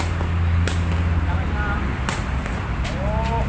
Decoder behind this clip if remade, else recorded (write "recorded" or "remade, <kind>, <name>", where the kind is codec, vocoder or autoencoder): recorded